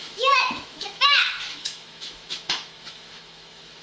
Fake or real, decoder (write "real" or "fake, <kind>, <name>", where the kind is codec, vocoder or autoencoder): fake, autoencoder, DAC-VAE